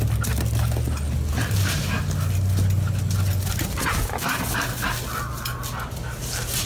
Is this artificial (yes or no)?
no